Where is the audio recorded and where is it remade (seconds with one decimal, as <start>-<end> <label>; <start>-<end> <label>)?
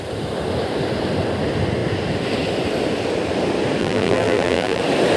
0.0-3.8 recorded; 3.8-4.8 remade; 4.8-5.2 recorded